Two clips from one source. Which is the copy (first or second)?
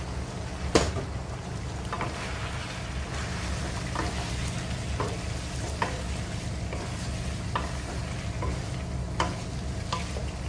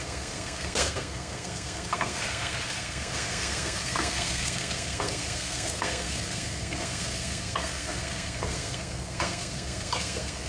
second